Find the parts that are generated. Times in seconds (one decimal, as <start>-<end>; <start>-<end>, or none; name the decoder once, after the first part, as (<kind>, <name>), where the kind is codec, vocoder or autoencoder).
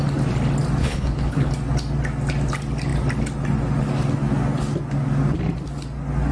0.8-1.5 (codec, HILCodec)